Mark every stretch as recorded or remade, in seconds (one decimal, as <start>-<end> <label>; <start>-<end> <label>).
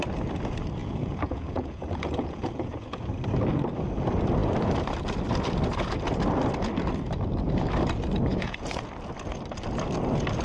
0.0-0.8 recorded; 0.8-3.0 remade; 3.0-8.3 recorded; 8.3-8.9 remade; 8.9-10.4 recorded